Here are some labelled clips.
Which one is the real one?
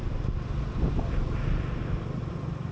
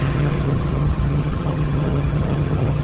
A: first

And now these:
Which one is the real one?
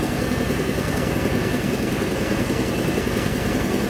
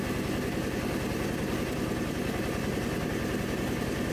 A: second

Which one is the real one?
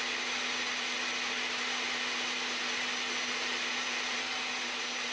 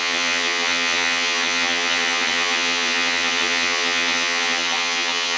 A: first